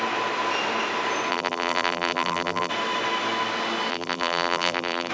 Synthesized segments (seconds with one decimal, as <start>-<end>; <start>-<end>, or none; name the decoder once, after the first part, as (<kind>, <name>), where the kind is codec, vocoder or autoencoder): 1.3-2.7 (vocoder, BigVGAN v2); 3.9-5.1